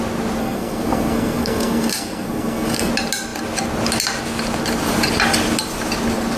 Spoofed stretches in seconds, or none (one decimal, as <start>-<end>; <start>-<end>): 0.4-2.9